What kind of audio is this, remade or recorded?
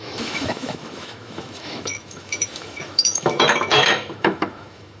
remade